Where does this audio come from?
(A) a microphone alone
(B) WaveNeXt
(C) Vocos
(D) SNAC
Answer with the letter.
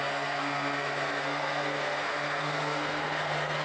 D